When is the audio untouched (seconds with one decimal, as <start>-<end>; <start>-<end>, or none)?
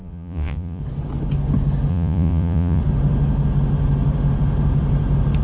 0.8-1.9; 2.8-5.4